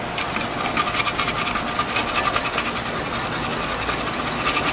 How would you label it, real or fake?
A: real